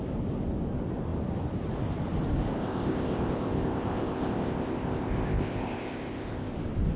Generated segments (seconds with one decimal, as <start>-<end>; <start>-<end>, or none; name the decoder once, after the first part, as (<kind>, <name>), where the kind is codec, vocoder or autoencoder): 2.6-6.5 (codec, ZipCodec)